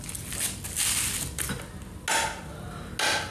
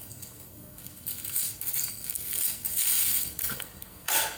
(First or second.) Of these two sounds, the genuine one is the first